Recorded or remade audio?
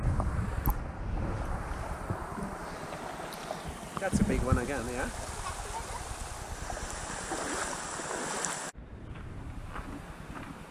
recorded